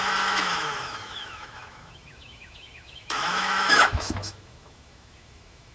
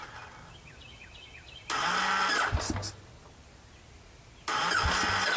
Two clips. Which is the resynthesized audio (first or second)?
first